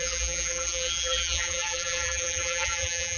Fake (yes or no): yes